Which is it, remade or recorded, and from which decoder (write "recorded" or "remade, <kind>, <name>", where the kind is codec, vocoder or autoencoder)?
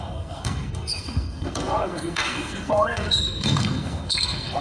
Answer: remade, codec, SNAC